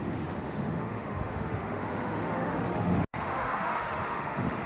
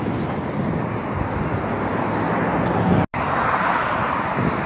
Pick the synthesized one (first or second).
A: first